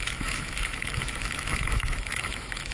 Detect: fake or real fake